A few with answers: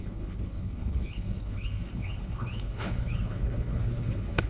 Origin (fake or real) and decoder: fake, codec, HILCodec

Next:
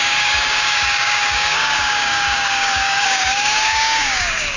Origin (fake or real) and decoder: fake, codec, DAC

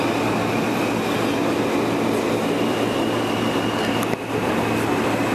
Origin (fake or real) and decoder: real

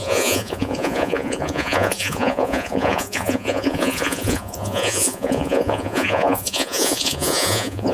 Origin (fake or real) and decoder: fake, vocoder, Vocos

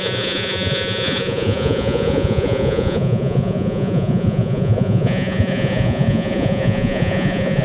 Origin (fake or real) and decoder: fake, vocoder, Vocos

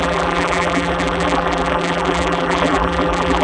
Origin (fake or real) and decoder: fake, vocoder, BigVGAN v2